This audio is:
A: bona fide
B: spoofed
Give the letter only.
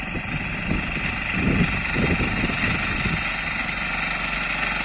A